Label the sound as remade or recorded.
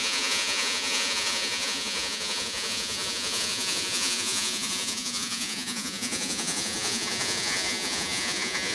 remade